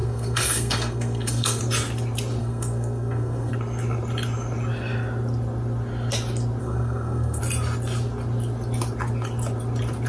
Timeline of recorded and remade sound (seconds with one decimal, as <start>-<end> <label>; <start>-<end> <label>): 0.0-1.6 remade; 1.6-2.4 recorded; 2.4-3.5 remade; 3.5-6.6 recorded; 6.6-7.4 remade; 7.4-10.1 recorded